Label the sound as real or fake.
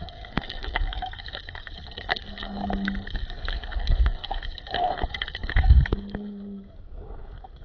fake